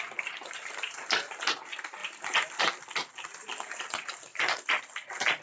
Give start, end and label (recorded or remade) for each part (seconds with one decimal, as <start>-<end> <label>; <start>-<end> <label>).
0.0-5.4 recorded